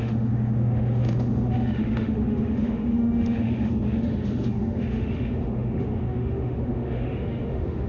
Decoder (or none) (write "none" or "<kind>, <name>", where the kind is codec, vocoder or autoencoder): autoencoder, DAC-VAE